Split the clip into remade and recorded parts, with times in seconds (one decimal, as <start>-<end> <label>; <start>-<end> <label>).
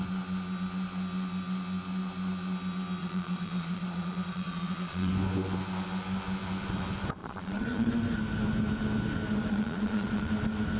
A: 0.0-3.0 recorded; 3.0-5.1 remade; 5.1-7.2 recorded; 7.2-7.9 remade; 7.9-9.5 recorded; 9.5-10.3 remade; 10.3-10.8 recorded